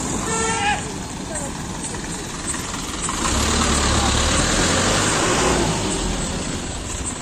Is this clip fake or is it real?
real